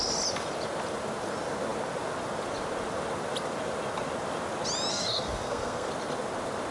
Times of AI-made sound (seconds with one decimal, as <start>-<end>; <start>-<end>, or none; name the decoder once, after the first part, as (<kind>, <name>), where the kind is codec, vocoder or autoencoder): 4.9-5.9 (codec, SNAC)